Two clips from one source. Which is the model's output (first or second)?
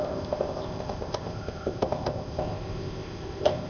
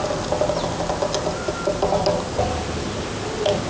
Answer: first